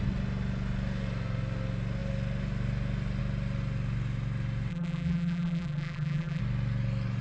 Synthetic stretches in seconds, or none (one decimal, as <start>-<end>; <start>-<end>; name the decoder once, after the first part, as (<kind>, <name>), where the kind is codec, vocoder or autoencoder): 4.7-6.4 (vocoder, BigVGAN v2)